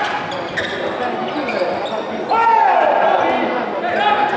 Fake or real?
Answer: real